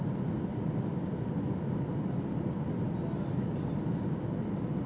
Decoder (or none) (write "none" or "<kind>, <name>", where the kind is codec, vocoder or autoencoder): none